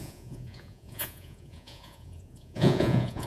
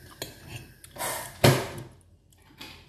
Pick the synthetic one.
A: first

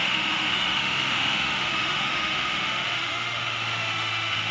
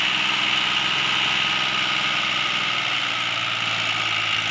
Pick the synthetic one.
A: first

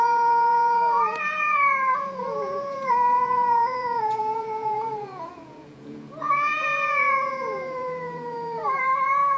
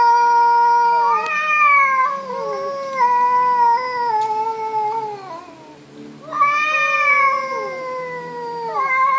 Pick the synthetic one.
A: first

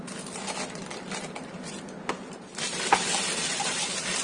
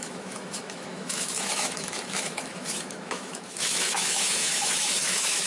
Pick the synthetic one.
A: second